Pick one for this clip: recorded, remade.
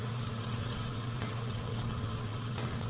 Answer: remade